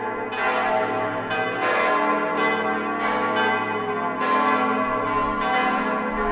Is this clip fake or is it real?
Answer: real